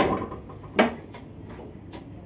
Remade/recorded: recorded